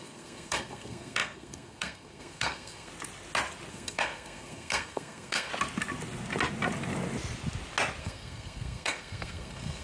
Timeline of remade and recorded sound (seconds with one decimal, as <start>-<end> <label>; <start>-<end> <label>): 0.0-2.9 remade; 2.9-3.7 recorded; 3.7-5.5 remade; 5.5-8.0 recorded; 8.0-9.8 remade